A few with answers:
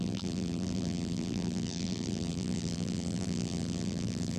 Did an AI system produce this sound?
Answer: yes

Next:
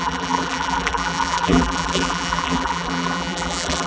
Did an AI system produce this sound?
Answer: yes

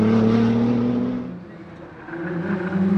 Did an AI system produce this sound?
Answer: no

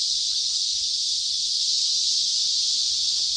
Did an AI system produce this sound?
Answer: no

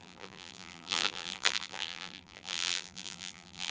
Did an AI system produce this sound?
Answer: yes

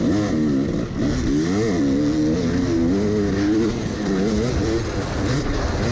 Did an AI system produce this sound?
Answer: no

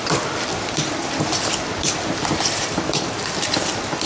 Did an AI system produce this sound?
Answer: yes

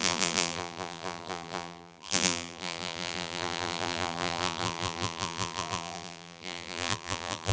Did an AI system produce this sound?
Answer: yes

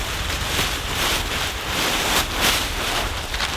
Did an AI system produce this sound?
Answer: yes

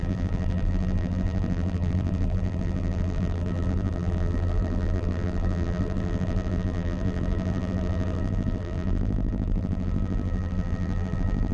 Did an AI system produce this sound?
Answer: yes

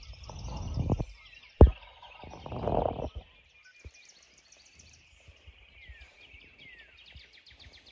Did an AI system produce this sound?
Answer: no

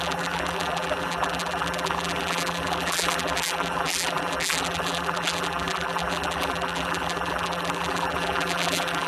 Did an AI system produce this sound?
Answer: yes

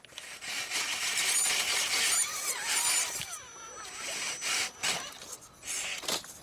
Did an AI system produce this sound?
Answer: no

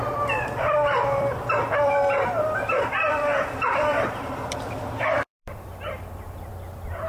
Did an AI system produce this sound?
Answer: yes